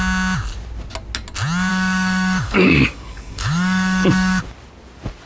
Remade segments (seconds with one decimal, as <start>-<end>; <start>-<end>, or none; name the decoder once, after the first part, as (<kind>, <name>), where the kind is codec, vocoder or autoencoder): 1.7-4.4 (codec, DAC)